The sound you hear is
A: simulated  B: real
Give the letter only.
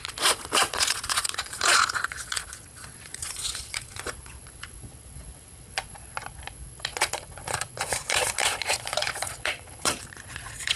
A